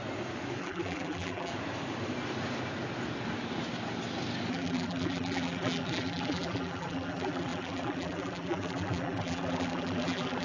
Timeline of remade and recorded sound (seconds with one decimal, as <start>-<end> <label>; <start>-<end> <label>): 0.0-0.6 recorded; 0.6-1.5 remade; 1.5-4.5 recorded; 4.5-10.4 remade